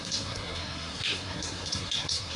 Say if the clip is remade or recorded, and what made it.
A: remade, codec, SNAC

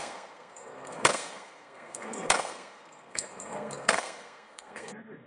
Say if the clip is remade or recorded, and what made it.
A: remade, codec, SNAC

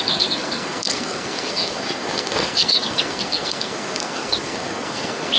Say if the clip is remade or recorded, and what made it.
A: remade, codec, SNAC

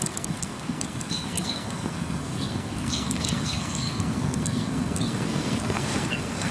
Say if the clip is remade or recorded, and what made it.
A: remade, codec, SNAC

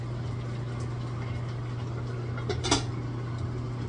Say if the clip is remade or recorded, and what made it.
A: recorded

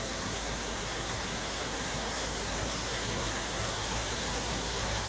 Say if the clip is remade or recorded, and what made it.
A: remade, codec, SNAC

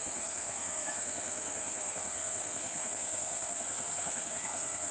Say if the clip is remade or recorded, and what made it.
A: remade, codec, SNAC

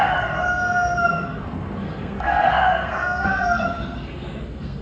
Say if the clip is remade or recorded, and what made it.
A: remade, codec, SNAC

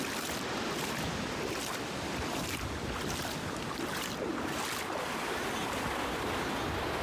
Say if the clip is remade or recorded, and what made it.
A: recorded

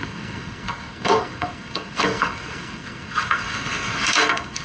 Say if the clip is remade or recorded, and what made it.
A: remade, codec, SNAC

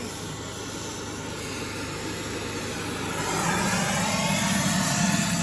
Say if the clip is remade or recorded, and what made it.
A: recorded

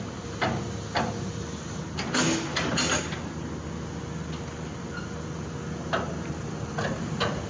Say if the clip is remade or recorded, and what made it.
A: recorded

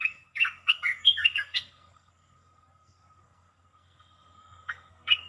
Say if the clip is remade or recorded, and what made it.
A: remade, codec, SNAC